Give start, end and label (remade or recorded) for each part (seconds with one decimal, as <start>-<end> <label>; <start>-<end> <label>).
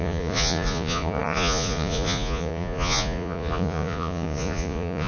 0.0-5.1 remade